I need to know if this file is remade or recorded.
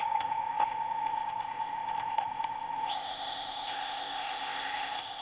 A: remade